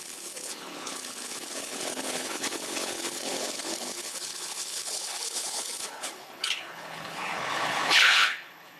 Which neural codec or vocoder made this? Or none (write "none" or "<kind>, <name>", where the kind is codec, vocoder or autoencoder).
codec, HILCodec